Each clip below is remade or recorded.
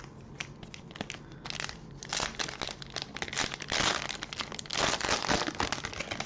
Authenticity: recorded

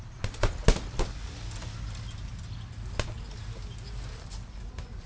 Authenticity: recorded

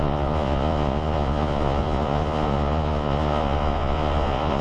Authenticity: remade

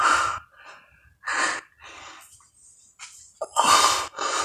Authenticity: recorded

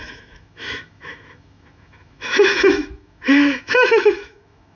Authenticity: remade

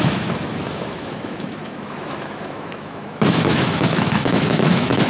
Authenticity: remade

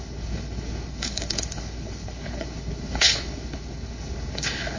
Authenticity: remade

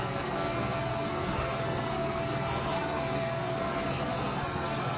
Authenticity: remade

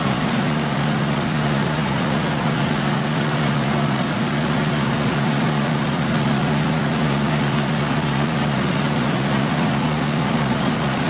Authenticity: remade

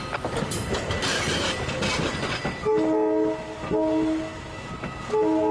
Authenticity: recorded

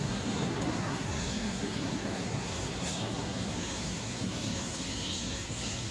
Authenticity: remade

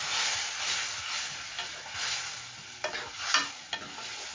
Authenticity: recorded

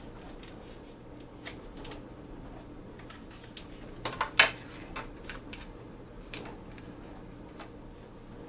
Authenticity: recorded